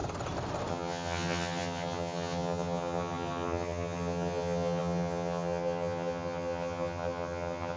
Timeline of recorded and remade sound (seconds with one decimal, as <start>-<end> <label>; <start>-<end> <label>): 0.0-0.7 recorded; 0.7-7.8 remade